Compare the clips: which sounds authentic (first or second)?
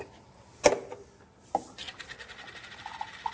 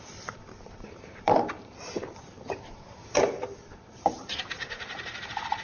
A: first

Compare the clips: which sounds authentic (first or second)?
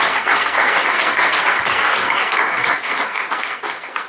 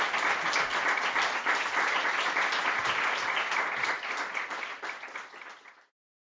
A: second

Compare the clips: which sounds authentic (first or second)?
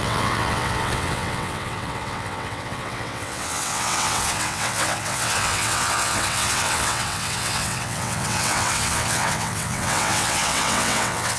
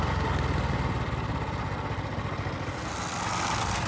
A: second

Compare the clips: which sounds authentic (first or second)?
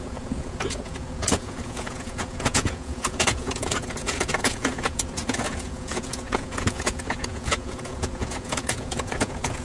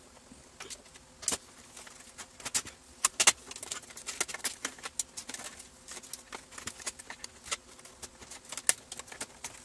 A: second